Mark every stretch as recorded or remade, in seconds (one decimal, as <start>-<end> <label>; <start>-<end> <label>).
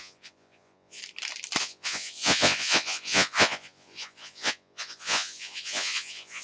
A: 0.0-1.0 remade; 1.0-1.6 recorded; 1.6-6.4 remade